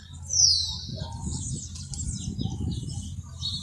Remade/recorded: recorded